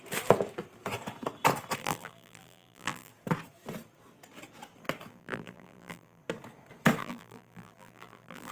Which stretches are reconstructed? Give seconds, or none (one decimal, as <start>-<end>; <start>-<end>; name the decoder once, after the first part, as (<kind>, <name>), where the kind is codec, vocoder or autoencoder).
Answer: 1.8-3.1 (vocoder, BigVGAN v2); 5.1-6.2; 7.0-8.5